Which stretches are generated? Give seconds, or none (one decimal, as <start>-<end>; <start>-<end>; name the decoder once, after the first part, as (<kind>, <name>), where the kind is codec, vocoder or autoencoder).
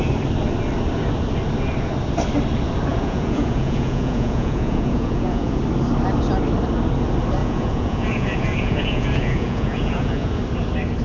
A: 2.9-5.6 (vocoder, Vocos); 7.4-10.4